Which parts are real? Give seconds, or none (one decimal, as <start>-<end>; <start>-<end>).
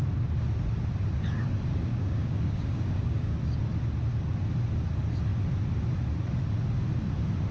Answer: 0.0-1.9; 3.4-7.5